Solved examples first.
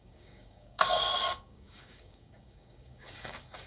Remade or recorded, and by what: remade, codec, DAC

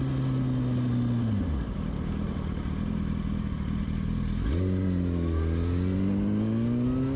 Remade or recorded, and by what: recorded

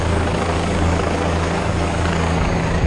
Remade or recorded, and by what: remade, codec, DAC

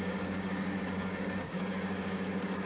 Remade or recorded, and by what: remade, codec, DAC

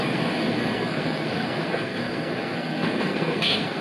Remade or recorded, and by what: remade, codec, SNAC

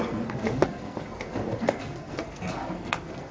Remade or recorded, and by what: remade, codec, SNAC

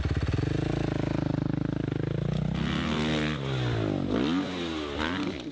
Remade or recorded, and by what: recorded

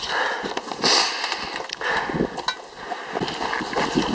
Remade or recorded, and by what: recorded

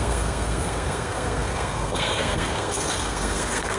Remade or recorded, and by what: remade, codec, SNAC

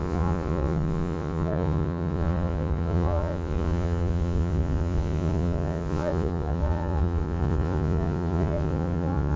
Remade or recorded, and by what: remade, vocoder, Vocos